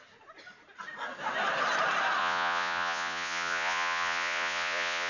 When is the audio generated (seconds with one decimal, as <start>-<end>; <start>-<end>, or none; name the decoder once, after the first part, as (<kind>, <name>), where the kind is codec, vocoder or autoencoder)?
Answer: 2.2-5.1 (vocoder, Vocos)